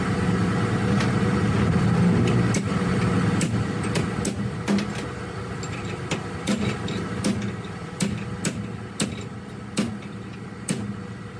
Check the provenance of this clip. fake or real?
real